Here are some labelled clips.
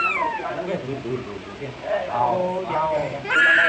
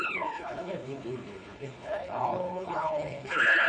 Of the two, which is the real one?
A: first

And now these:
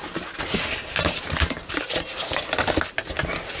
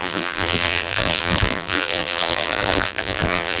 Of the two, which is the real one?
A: first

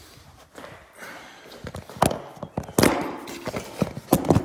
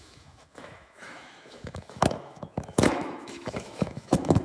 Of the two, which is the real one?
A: first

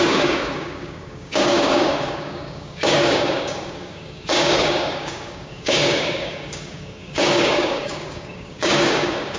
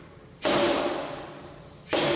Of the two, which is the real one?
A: second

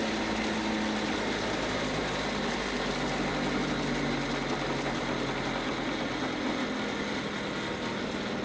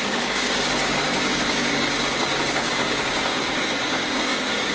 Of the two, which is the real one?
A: first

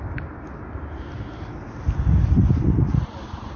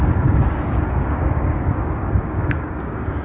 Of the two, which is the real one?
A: first